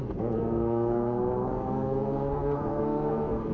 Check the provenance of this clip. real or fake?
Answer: fake